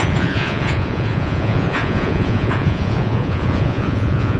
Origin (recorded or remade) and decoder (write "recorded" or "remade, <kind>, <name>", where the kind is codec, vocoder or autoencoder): remade, vocoder, Vocos